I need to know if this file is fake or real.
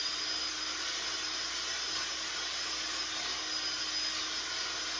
real